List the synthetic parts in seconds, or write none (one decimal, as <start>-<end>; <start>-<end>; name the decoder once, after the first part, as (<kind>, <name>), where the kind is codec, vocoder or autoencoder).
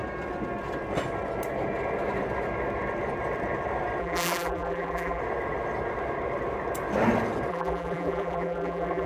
4.0-5.2 (vocoder, BigVGAN v2); 7.5-9.1